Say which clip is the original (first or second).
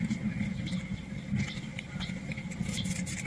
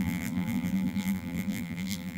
first